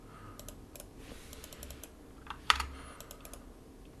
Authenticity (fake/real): real